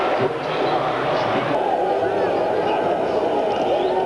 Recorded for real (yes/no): yes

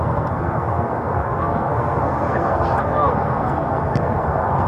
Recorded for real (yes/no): no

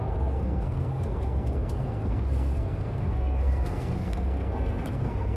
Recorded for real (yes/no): no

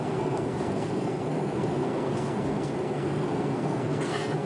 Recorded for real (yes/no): no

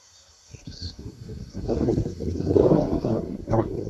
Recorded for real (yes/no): no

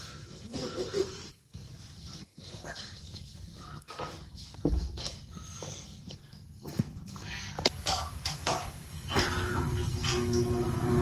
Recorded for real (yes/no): no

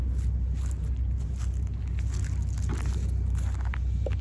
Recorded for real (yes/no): yes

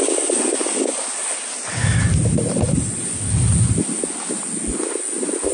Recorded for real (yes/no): yes